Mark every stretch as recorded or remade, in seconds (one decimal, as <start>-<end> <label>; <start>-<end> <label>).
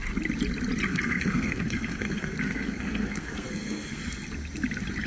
0.0-0.9 recorded; 0.9-4.0 remade; 4.0-5.1 recorded